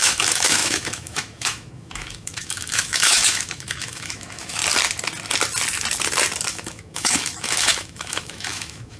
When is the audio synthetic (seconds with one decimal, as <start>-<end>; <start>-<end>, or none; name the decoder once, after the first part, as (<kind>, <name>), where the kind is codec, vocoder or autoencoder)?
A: 0.0-4.6 (autoencoder, DAC-VAE); 6.5-9.0